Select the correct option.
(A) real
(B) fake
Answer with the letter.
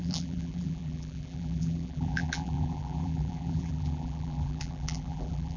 B